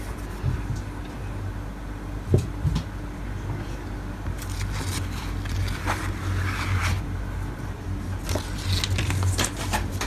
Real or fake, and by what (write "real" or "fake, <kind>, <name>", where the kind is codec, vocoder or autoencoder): real